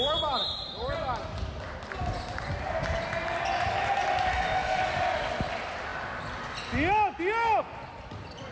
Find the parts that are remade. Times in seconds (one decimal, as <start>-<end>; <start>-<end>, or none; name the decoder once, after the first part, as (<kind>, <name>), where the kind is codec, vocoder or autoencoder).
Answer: 4.3-4.8 (autoencoder, DAC-VAE)